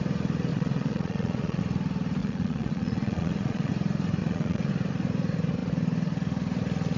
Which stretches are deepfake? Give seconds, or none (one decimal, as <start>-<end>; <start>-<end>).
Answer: 0.5-1.6; 2.2-3.7; 4.2-4.7